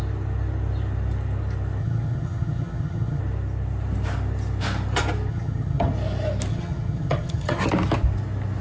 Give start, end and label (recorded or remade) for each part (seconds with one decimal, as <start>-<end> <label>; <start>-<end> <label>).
0.0-1.8 recorded; 1.8-3.2 remade; 3.2-5.3 recorded; 5.3-5.9 remade; 5.9-6.5 recorded; 6.5-7.6 remade; 7.6-8.6 recorded